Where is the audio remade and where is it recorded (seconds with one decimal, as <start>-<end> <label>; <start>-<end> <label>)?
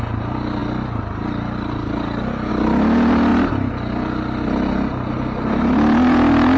0.0-6.6 recorded